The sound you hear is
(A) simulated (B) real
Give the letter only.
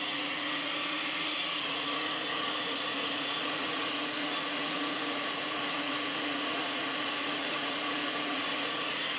A